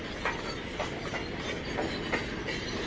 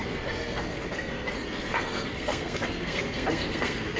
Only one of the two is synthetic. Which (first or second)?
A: second